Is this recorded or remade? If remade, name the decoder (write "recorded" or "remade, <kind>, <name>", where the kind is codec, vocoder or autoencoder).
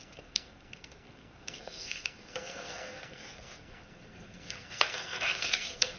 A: remade, codec, SNAC